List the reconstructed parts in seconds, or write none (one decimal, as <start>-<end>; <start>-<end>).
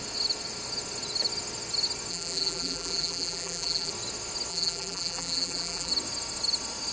2.1-3.9; 4.5-5.9